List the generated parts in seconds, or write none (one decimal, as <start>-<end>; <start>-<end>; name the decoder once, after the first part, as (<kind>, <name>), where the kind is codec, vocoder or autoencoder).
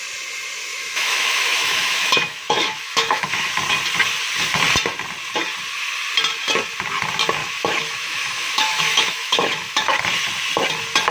0.7-3.5 (autoencoder, DAC-VAE); 7.4-10.0